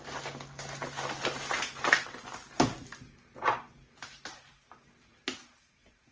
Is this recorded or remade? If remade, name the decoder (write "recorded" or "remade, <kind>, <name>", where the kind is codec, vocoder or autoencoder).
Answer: recorded